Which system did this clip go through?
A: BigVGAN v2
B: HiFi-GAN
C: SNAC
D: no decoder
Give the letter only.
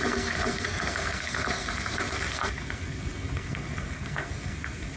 C